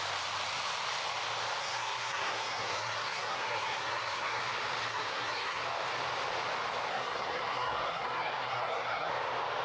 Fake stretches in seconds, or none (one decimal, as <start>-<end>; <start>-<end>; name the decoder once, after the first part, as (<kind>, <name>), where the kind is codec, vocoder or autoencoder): 1.6-4.4 (codec, SNAC); 4.9-5.6; 6.9-9.1